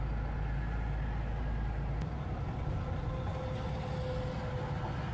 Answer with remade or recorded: recorded